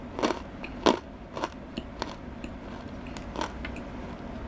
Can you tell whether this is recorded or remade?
recorded